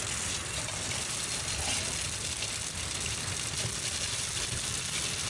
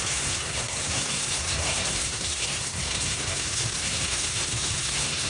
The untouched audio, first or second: first